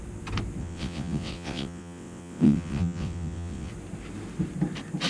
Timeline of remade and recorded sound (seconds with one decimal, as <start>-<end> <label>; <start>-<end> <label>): 0.0-0.6 recorded; 0.6-3.7 remade; 3.7-5.1 recorded